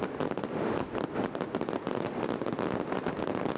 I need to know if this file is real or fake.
real